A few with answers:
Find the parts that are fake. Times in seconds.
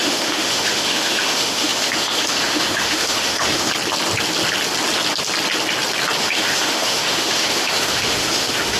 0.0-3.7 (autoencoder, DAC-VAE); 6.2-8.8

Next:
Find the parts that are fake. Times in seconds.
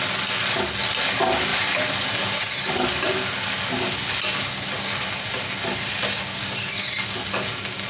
none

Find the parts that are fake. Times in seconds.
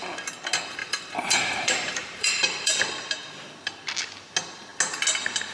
0.8-2.8 (vocoder, BigVGAN v2)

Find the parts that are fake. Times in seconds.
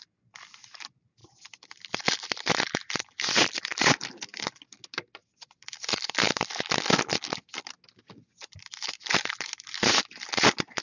none